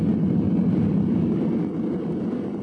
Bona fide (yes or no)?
yes